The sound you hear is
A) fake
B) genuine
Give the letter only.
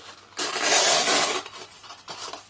B